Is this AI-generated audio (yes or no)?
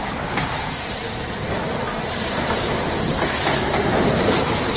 yes